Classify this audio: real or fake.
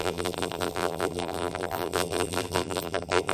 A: fake